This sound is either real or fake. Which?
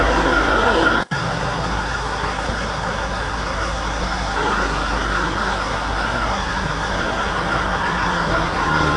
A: fake